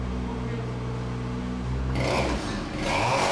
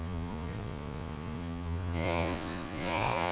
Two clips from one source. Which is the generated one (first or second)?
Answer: second